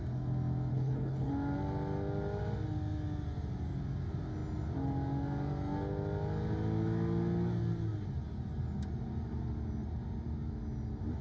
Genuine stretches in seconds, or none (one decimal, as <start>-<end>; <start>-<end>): 0.0-0.7; 1.3-11.2